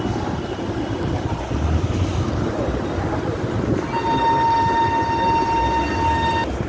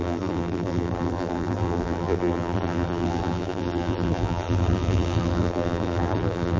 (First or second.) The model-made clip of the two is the second